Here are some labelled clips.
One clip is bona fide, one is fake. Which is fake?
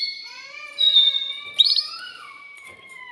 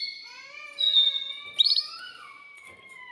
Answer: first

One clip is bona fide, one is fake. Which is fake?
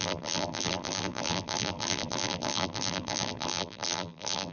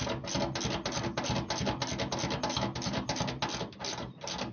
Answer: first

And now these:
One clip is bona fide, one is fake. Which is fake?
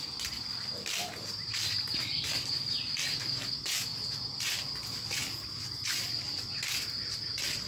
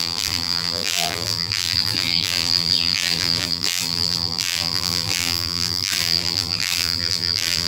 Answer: second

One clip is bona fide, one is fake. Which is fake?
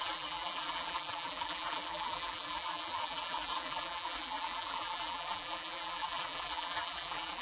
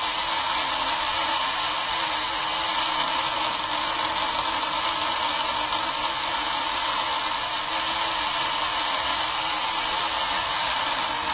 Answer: first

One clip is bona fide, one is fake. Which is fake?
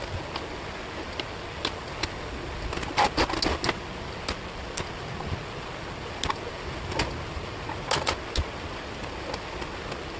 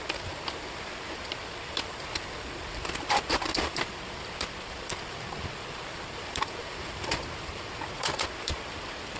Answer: second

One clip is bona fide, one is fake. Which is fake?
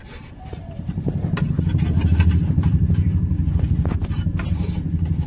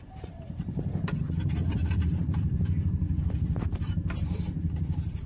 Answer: second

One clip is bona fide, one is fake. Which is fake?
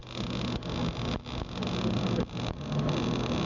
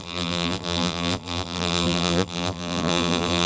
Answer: second